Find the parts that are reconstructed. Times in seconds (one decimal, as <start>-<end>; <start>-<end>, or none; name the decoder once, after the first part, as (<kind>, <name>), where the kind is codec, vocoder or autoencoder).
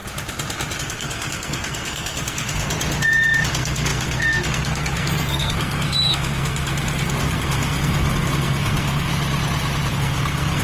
0.8-2.7 (codec, SNAC); 3.5-9.1; 9.9-10.6